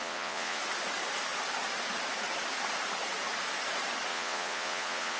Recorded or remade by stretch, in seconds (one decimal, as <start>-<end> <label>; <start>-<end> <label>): 0.0-0.6 remade; 0.6-4.1 recorded; 4.1-5.2 remade